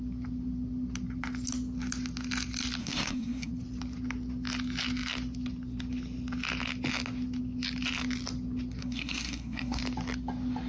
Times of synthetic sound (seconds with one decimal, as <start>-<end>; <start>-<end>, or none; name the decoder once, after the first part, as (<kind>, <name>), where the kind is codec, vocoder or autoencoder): 2.8-3.5 (codec, SNAC); 8.8-9.8

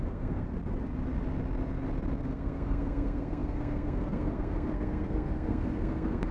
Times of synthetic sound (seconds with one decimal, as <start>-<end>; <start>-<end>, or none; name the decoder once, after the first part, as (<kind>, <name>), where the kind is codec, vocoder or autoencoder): 0.0-0.5 (codec, SNAC); 2.2-6.3

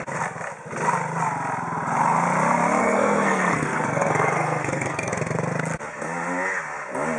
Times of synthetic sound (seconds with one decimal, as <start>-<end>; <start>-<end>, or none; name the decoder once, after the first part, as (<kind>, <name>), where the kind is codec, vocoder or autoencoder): 2.8-5.1 (codec, SNAC)

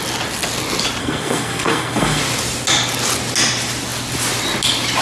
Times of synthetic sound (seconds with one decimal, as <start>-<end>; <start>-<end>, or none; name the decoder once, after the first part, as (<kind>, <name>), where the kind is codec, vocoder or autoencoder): 1.0-2.2 (codec, SNAC)